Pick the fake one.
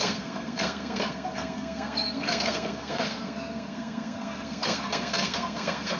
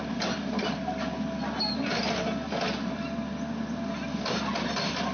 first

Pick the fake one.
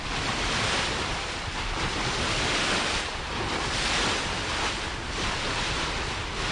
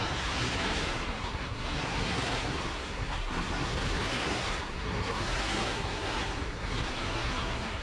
second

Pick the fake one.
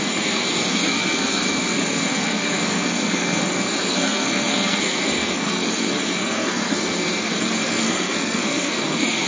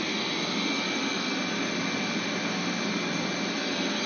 first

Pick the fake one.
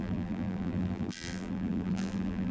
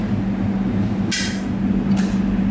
first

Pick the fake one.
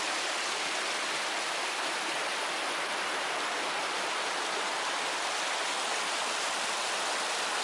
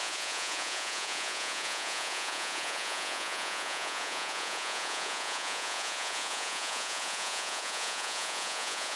second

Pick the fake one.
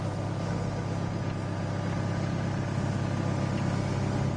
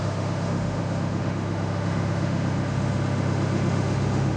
second